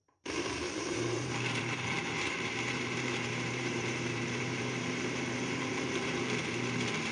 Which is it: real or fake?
fake